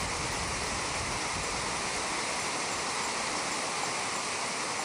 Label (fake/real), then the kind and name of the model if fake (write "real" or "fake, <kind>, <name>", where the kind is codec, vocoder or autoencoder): real